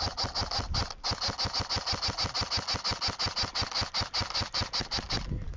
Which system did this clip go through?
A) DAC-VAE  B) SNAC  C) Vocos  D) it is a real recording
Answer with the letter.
D